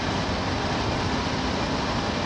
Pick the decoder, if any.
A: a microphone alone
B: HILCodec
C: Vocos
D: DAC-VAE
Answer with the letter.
A